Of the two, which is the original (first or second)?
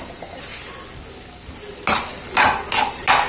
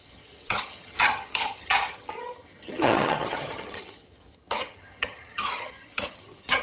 first